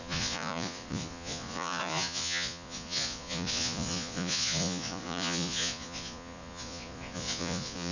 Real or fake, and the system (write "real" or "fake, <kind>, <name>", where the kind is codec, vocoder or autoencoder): fake, vocoder, Vocos